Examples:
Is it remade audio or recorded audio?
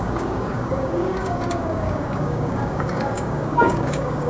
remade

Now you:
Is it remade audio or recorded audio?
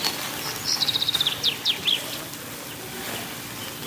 recorded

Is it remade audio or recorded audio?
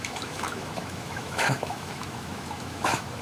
remade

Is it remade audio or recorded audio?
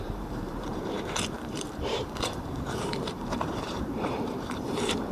remade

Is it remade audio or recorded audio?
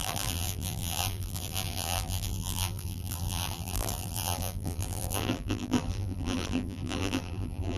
remade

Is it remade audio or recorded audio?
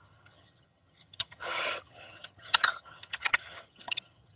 remade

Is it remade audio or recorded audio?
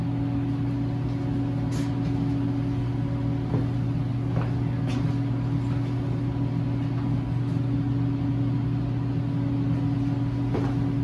recorded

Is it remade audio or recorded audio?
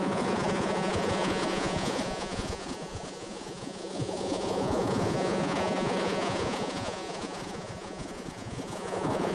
remade